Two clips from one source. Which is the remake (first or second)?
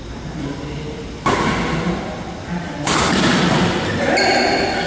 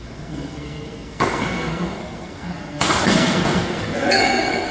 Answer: second